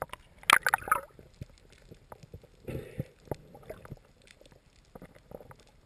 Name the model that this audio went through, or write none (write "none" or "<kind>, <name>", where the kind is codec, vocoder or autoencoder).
none